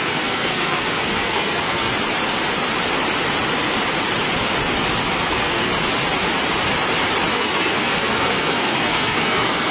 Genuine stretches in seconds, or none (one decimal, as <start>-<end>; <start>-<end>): 1.9-5.2; 5.7-7.3